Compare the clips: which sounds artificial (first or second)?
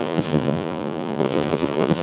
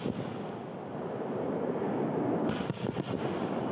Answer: first